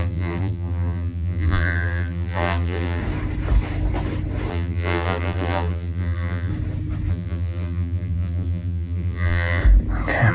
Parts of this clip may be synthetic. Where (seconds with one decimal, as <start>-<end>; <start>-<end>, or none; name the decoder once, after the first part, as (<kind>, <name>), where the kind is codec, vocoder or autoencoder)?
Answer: 0.0-3.0 (vocoder, BigVGAN v2); 4.5-6.5; 7.1-9.6

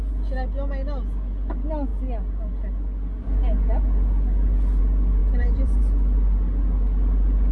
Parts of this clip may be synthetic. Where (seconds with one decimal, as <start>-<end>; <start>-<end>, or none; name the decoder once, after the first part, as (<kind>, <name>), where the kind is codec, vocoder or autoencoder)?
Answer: 5.2-5.8 (vocoder, BigVGAN v2)

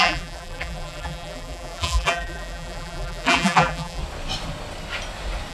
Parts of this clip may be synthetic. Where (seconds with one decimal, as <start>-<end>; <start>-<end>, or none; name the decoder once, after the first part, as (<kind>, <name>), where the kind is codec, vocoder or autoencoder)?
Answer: 0.0-4.0 (vocoder, BigVGAN v2)